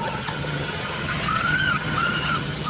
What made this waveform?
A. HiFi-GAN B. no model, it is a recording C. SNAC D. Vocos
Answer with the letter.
A